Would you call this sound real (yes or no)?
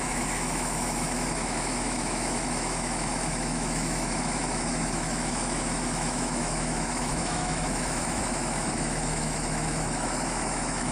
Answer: no